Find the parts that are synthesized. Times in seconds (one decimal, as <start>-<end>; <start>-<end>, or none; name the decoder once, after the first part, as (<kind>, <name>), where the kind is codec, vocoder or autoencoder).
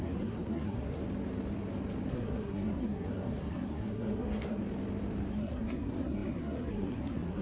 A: 0.0-1.0 (codec, SNAC); 2.1-4.6; 5.3-7.4